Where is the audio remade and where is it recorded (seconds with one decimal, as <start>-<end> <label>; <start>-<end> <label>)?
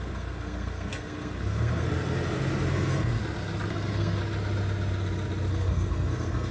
0.0-1.9 remade; 1.9-2.7 recorded; 2.7-3.2 remade; 3.2-3.7 recorded; 3.7-4.2 remade; 4.2-5.5 recorded; 5.5-6.5 remade